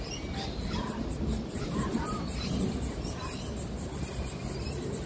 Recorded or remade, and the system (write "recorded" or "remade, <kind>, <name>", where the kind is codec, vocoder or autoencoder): recorded